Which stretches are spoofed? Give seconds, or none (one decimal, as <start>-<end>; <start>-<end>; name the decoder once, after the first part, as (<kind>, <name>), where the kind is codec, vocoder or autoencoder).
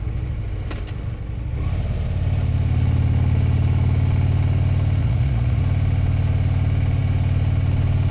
5.0-5.6 (vocoder, Vocos)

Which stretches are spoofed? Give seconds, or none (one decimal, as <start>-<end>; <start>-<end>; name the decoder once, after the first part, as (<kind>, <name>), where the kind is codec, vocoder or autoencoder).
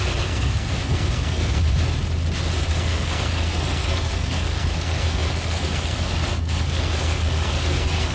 0.0-1.6 (codec, SNAC); 2.7-8.1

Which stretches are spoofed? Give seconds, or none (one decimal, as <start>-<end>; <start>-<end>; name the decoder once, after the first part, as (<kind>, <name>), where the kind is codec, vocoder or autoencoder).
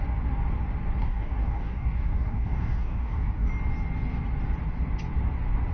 1.0-3.5 (codec, DAC)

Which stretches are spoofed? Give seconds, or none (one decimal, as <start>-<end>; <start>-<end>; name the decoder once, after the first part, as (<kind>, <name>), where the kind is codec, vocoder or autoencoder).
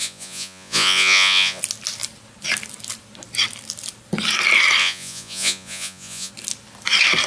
0.0-1.6 (vocoder, Vocos); 4.8-6.3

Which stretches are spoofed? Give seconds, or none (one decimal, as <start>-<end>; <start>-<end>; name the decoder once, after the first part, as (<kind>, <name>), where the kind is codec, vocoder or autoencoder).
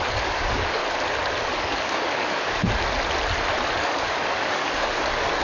0.0-0.8 (codec, DAC); 1.5-2.6; 3.7-5.4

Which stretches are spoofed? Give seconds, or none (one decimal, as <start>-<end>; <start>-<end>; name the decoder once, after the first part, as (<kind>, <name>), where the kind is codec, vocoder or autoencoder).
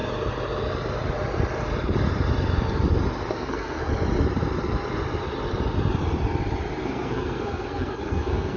3.3-3.9 (codec, SNAC); 6.8-8.6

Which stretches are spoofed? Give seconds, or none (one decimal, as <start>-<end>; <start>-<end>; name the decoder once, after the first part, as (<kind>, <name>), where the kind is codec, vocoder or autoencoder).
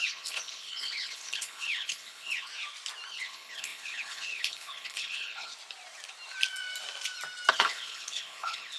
0.0-2.5 (codec, HILCodec); 3.1-5.5; 7.5-8.8